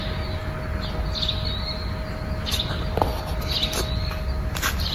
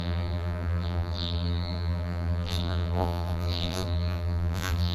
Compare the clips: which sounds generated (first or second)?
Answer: second